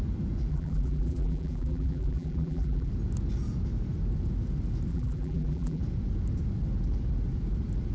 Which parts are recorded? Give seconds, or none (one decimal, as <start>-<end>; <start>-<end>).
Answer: 0.0-0.5; 2.9-4.9; 5.8-7.9